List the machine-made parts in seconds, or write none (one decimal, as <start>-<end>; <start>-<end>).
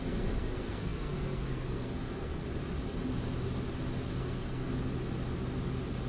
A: 0.0-2.5; 4.2-4.7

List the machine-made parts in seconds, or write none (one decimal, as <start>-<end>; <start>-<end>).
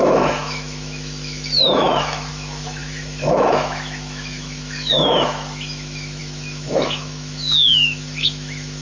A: 0.0-8.8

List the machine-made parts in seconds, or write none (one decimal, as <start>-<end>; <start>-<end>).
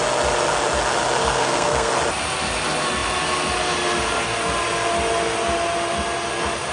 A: 1.2-1.9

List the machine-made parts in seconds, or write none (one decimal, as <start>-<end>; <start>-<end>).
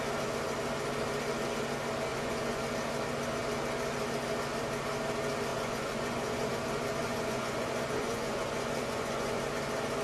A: 2.1-2.6; 5.5-6.5; 7.0-9.4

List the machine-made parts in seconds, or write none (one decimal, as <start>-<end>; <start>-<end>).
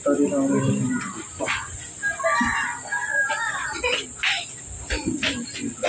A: none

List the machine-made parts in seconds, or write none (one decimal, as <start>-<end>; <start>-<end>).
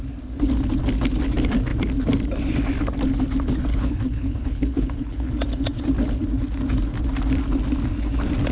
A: 3.7-5.3